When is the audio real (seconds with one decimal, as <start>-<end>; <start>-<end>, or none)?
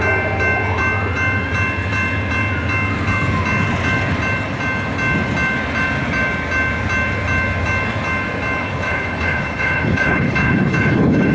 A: 0.0-8.6